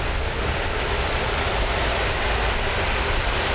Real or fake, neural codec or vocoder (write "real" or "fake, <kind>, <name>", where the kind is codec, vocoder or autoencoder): real